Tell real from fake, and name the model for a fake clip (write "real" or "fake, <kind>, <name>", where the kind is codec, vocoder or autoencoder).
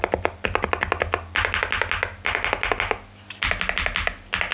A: real